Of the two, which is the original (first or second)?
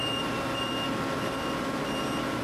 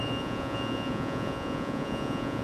first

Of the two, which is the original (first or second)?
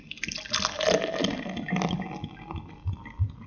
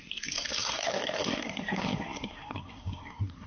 first